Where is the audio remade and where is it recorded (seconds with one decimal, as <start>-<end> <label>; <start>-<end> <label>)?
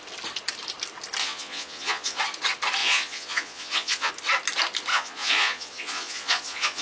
0.0-1.2 recorded; 1.2-2.2 remade; 2.2-2.8 recorded; 2.8-4.1 remade; 4.1-4.9 recorded; 4.9-6.8 remade